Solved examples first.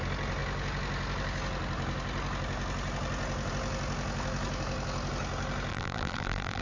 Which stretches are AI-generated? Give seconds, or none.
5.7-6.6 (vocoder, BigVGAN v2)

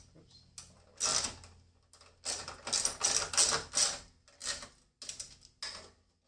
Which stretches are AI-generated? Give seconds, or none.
none

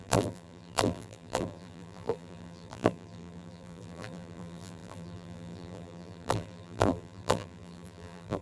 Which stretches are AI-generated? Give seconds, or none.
0.0-8.4 (vocoder, BigVGAN v2)

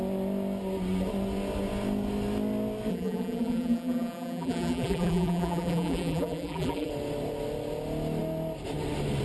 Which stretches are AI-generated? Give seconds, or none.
2.9-6.9 (vocoder, BigVGAN v2)